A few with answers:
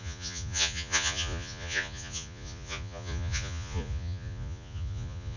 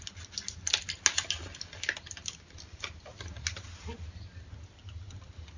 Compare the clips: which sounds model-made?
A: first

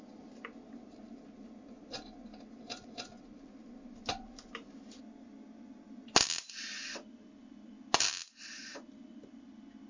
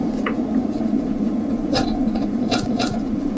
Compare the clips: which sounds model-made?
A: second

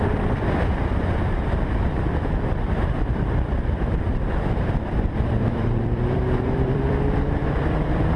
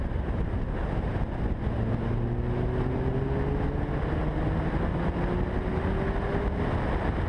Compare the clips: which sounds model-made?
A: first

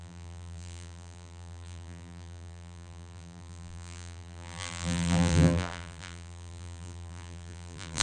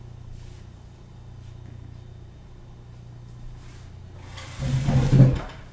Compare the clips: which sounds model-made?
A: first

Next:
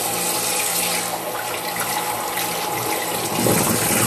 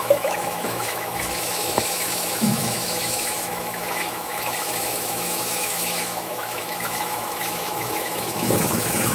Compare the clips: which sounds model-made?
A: second